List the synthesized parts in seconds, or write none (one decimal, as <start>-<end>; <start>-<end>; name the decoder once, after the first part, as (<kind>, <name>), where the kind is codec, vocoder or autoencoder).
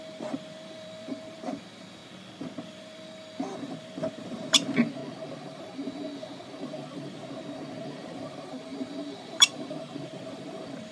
0.0-2.0 (vocoder, BigVGAN v2); 2.6-5.0; 6.6-7.2; 7.8-10.9